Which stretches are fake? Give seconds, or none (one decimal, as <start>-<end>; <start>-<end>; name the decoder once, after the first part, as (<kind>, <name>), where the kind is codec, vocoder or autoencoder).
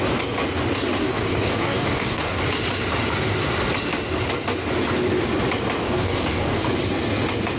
1.0-2.4 (codec, DAC); 5.8-6.6